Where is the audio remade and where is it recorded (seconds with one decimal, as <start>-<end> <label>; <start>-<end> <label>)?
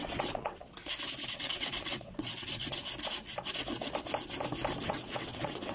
0.0-0.6 remade; 0.6-1.3 recorded; 1.3-2.8 remade; 2.8-4.8 recorded; 4.8-5.7 remade